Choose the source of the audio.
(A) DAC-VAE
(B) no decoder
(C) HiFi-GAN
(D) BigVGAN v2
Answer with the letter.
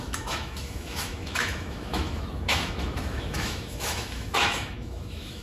A